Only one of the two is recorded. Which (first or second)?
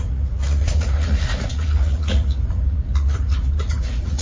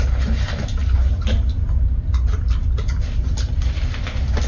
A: second